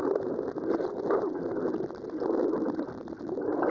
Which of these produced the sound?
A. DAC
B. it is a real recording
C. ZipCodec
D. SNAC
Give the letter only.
B